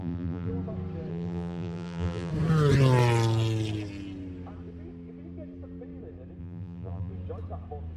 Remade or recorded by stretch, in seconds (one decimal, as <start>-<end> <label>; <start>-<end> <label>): 0.0-0.5 remade; 0.5-1.1 recorded; 1.1-2.3 remade; 2.3-6.4 recorded; 6.4-7.1 remade; 7.1-8.0 recorded